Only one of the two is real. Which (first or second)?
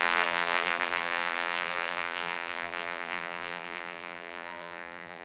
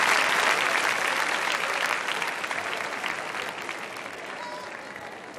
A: second